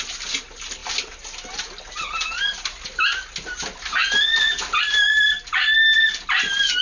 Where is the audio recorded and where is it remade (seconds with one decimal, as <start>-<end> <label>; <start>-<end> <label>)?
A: 0.0-6.8 recorded